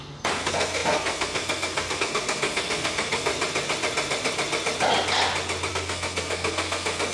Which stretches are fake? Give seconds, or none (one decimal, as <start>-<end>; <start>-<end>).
0.0-3.3; 5.7-7.1